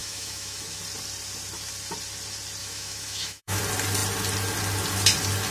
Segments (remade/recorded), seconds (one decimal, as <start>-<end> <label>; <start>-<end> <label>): 0.0-0.8 remade; 0.8-2.6 recorded; 2.6-3.6 remade; 3.6-5.5 recorded